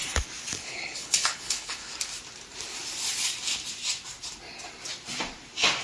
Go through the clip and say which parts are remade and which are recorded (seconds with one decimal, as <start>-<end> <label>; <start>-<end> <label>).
0.0-0.5 recorded; 0.5-1.9 remade; 1.9-5.8 recorded